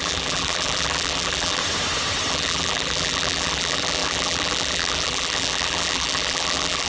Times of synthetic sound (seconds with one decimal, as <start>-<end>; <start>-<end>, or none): 0.0-1.6; 2.3-6.9

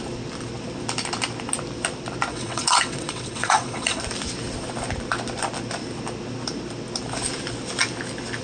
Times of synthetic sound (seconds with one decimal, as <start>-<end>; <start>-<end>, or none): 2.3-4.0

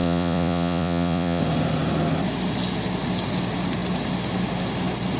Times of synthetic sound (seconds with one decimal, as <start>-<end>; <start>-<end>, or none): 0.0-1.4

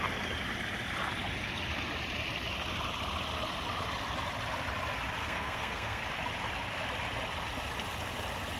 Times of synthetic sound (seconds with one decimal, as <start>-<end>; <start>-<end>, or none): 5.2-6.0

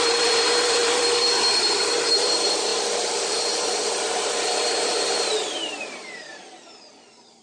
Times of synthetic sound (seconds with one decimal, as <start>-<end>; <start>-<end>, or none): 0.0-7.4